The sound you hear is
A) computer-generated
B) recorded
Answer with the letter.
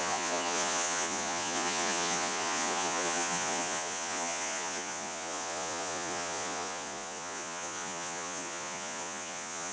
A